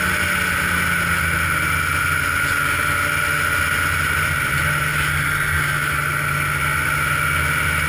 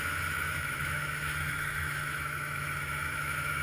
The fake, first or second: second